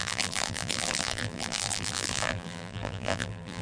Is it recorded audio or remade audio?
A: remade